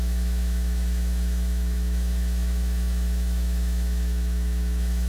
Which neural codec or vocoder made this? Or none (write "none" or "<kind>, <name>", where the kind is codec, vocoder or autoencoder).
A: autoencoder, DAC-VAE